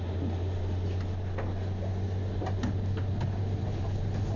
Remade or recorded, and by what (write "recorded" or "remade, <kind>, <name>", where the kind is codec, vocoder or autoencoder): recorded